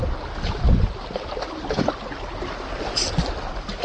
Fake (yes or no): no